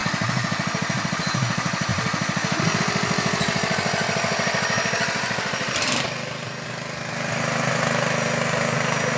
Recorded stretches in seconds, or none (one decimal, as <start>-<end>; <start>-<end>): 0.0-9.2